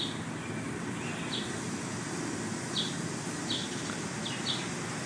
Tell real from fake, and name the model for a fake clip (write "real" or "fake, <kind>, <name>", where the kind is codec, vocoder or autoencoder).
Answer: real